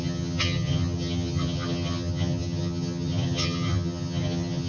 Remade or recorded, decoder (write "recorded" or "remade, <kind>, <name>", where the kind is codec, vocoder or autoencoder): remade, vocoder, HiFi-GAN